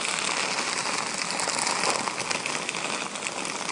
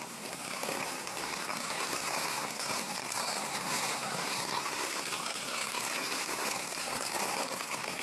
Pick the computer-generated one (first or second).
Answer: second